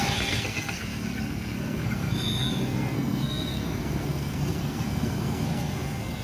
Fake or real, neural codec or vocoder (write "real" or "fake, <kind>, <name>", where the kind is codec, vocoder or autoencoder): fake, codec, SNAC